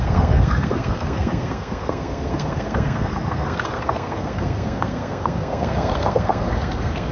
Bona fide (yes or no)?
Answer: no